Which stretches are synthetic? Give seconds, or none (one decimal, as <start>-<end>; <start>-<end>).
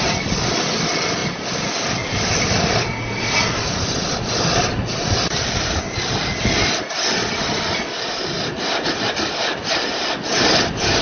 none